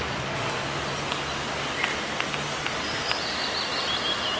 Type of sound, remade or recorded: recorded